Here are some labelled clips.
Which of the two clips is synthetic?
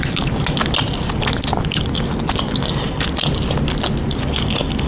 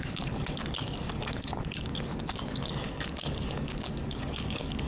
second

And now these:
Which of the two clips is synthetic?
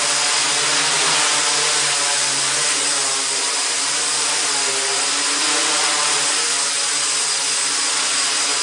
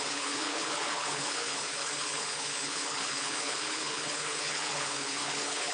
second